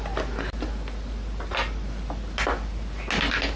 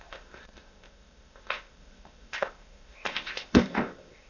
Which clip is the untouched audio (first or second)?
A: first